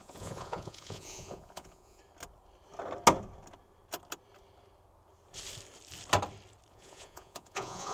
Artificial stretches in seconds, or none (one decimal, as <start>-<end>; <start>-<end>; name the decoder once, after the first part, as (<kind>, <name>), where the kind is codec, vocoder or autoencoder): 0.0-2.0 (vocoder, Vocos); 6.7-7.9